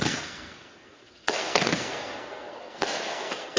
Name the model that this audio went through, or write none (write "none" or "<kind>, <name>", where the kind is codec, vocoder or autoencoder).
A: codec, SNAC